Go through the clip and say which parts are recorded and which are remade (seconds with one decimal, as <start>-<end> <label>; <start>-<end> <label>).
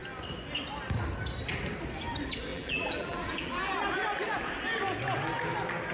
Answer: 0.0-2.5 recorded; 2.5-3.7 remade; 3.7-5.9 recorded